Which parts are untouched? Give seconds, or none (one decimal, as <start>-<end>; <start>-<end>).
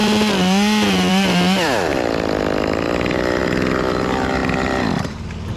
3.4-5.6